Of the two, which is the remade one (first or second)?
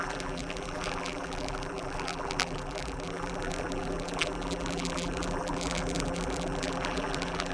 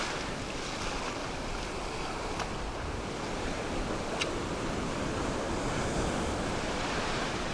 first